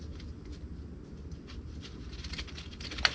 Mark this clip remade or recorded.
recorded